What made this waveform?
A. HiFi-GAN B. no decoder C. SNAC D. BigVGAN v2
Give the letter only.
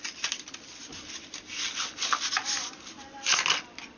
B